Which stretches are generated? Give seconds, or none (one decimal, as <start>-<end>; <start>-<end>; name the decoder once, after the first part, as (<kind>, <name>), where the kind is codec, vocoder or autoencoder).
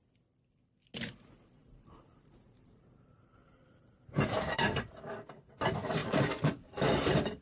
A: 1.6-5.5 (vocoder, BigVGAN v2); 6.0-7.0